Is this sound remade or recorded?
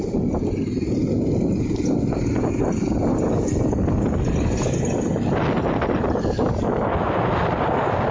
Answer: recorded